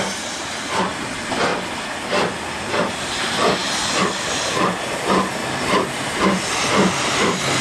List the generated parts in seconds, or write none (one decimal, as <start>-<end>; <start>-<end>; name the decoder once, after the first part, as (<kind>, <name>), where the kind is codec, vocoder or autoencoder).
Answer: 0.0-1.5 (vocoder, BigVGAN v2); 2.9-7.6